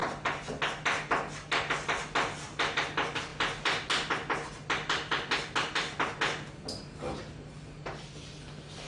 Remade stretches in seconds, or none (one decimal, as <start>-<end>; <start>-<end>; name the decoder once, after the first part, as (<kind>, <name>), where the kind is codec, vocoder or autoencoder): 0.0-0.5 (vocoder, BigVGAN v2)

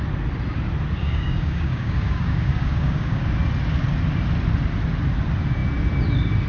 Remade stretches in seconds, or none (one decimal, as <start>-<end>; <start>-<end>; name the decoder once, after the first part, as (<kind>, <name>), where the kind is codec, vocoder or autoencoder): 1.0-3.2 (codec, DAC)